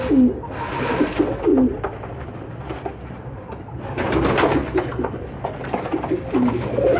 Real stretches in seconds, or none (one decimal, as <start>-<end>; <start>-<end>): 0.0-7.0